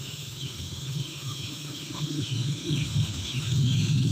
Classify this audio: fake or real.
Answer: fake